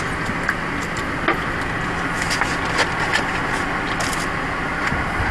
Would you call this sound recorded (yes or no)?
yes